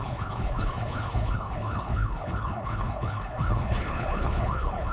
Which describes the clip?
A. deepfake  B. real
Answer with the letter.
A